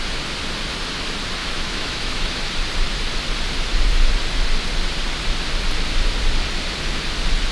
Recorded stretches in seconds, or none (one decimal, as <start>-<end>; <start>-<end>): 0.0-1.4; 2.4-7.5